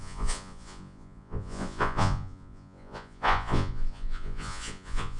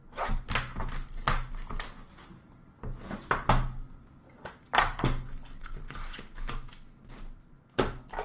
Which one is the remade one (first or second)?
first